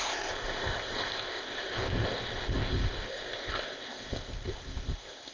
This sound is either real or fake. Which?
fake